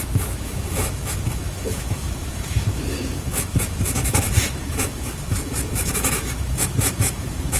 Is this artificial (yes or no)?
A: yes